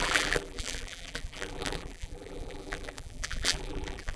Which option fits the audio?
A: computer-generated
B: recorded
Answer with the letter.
A